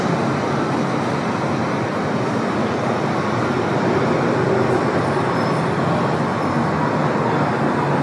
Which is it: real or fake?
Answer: real